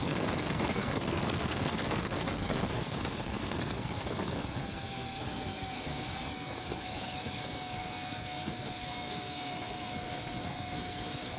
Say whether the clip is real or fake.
fake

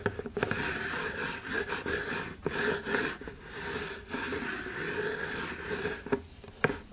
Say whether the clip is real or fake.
real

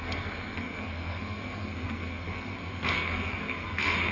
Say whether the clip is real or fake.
fake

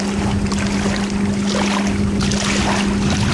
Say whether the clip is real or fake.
real